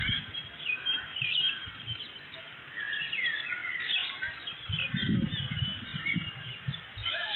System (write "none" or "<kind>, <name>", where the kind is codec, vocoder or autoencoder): vocoder, BigVGAN v2